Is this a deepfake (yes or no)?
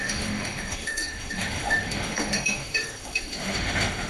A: yes